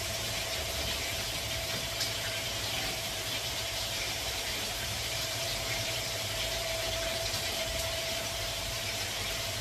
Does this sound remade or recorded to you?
remade